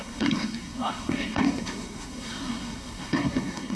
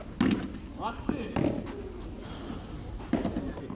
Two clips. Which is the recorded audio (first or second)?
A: second